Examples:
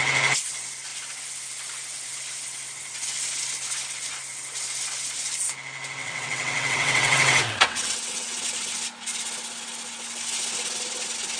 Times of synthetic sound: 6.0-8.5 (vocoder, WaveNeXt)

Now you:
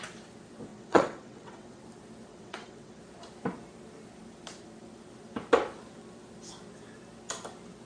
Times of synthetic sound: 0.7-1.8 (vocoder, WaveNeXt); 2.3-3.0

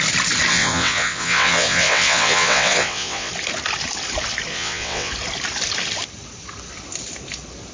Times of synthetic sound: 0.5-3.3 (vocoder, WaveNeXt); 4.5-5.1

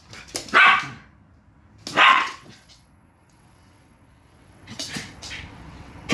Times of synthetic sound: 2.1-6.1 (vocoder, WaveNeXt)

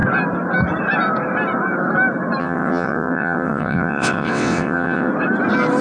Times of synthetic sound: 2.4-5.1 (vocoder, WaveNeXt)

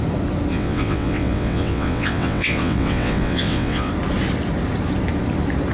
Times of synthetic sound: 0.5-3.9 (vocoder, WaveNeXt)